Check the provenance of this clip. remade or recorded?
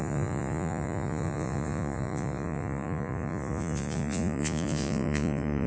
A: remade